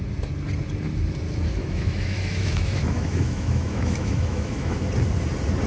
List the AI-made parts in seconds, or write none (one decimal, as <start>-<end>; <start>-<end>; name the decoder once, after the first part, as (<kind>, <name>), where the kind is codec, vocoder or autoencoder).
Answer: 1.5-4.9 (autoencoder, DAC-VAE)

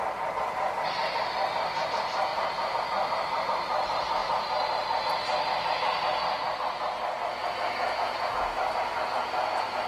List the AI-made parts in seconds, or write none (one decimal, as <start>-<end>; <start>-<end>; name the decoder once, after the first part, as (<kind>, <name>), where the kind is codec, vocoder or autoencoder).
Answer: 2.3-2.8 (vocoder, Vocos); 7.4-8.6

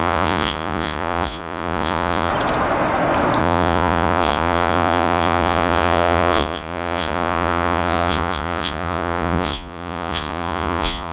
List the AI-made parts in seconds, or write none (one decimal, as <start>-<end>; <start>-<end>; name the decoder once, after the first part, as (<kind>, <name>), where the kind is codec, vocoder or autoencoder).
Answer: 0.0-2.3 (vocoder, Vocos); 3.4-11.1